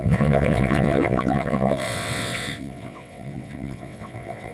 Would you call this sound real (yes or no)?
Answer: no